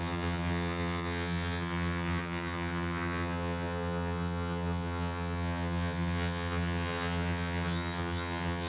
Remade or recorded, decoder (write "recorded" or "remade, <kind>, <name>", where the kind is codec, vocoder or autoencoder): remade, vocoder, HiFi-GAN